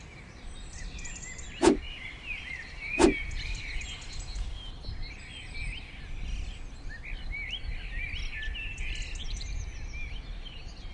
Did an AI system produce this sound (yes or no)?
no